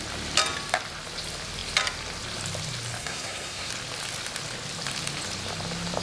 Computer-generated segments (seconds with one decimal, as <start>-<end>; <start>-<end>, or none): 3.0-3.7